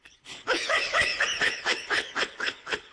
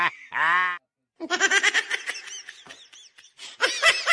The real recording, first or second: second